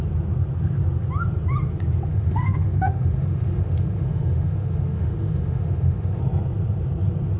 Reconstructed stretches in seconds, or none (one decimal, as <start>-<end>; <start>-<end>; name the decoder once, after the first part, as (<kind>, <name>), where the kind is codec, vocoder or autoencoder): 2.1-6.2 (autoencoder, DAC-VAE)

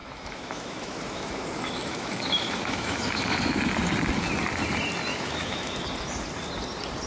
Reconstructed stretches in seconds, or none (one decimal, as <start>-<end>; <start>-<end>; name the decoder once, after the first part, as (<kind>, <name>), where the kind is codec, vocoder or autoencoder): 0.0-3.6 (autoencoder, DAC-VAE); 5.1-5.8

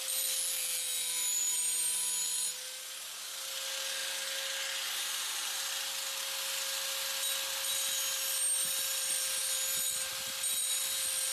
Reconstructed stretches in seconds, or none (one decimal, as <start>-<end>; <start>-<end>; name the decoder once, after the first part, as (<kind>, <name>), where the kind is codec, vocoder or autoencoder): none

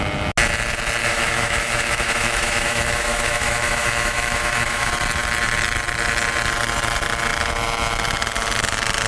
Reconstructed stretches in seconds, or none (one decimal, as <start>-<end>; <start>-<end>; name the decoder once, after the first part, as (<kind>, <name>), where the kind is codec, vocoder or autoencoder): 1.0-4.9 (autoencoder, DAC-VAE)

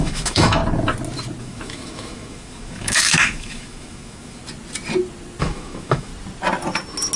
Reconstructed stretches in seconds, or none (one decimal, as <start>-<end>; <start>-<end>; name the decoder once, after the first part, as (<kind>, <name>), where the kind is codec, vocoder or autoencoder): 0.0-0.6 (autoencoder, DAC-VAE); 1.4-4.4; 5.4-6.1

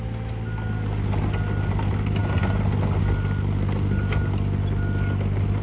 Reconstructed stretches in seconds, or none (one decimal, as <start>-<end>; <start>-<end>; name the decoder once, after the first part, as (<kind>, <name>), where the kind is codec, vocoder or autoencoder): none

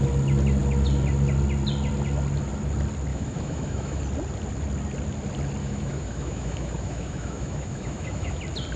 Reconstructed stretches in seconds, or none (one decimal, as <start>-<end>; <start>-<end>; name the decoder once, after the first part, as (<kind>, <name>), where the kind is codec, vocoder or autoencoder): 3.1-4.0 (autoencoder, DAC-VAE); 5.6-8.4

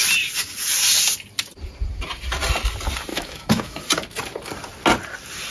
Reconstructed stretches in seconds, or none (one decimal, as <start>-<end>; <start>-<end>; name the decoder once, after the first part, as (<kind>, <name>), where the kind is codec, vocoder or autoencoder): 3.1-3.8 (autoencoder, DAC-VAE)